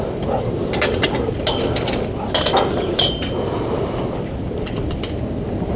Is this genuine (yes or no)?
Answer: yes